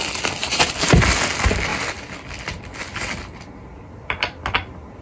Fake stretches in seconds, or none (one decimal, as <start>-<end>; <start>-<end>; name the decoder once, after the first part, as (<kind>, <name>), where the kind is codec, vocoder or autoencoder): 0.4-1.0 (vocoder, BigVGAN v2)